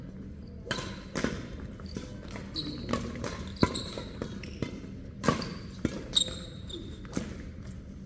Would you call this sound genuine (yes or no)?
yes